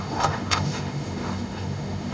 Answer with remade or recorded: remade